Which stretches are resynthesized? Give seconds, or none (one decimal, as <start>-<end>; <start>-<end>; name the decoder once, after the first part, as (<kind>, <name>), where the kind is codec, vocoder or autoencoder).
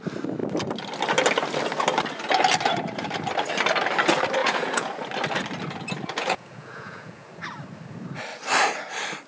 4.4-4.9 (vocoder, Vocos); 6.2-7.3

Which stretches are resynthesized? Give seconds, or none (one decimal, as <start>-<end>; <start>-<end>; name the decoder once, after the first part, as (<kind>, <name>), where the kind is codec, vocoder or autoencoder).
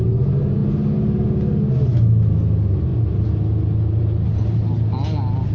none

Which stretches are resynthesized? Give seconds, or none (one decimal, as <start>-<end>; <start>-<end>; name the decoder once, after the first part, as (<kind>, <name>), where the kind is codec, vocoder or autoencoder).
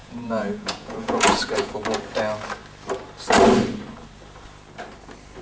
0.0-1.8 (vocoder, Vocos)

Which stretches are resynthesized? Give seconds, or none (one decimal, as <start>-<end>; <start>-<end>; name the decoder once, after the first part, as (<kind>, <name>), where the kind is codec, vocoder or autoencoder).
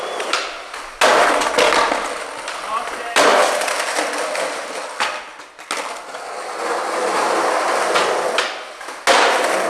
none